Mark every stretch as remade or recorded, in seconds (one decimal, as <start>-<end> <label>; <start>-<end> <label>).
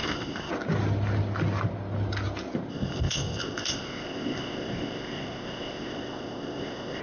0.0-0.5 remade; 0.5-2.7 recorded; 2.7-7.0 remade